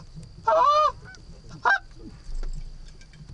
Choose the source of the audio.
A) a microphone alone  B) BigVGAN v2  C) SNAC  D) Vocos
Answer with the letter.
A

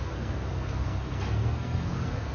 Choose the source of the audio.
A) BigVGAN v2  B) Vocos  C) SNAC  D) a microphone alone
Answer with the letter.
C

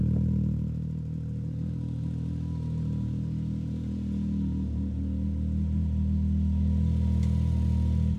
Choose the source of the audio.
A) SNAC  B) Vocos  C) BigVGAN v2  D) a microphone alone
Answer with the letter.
D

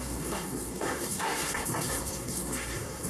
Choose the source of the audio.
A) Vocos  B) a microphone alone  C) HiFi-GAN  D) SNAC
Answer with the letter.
D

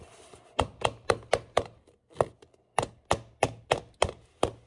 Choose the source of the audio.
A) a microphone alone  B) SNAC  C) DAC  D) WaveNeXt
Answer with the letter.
A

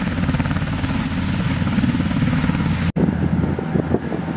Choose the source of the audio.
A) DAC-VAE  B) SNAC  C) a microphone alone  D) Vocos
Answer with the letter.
C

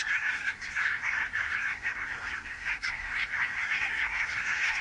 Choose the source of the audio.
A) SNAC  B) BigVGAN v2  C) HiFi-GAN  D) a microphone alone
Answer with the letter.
A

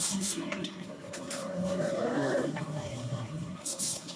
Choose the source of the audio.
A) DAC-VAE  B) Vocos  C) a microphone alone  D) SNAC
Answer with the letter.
D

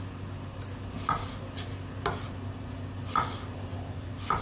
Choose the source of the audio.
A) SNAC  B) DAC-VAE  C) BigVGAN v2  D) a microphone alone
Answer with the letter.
D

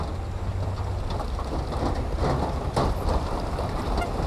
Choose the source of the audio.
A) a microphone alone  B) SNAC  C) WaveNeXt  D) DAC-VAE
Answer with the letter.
A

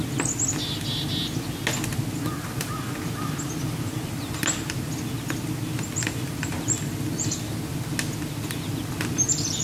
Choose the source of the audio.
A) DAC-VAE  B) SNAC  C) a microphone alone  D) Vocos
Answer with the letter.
C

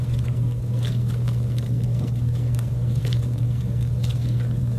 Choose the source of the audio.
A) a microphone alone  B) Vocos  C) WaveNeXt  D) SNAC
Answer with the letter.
D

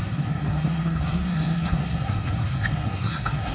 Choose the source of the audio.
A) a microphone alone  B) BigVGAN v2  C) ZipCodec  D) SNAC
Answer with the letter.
D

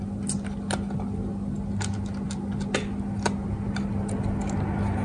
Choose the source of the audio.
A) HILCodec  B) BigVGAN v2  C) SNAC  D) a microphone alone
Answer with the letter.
D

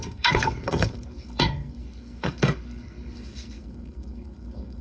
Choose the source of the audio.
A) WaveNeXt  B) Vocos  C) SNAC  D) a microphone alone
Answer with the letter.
C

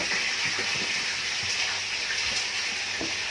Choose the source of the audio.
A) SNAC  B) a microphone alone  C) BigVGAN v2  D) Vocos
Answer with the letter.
B